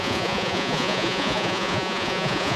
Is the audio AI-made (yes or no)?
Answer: yes